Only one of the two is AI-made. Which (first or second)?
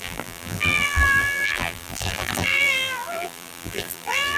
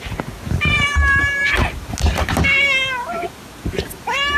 first